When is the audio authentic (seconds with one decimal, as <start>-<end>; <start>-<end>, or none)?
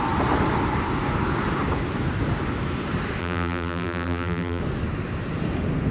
0.0-3.2; 4.6-5.9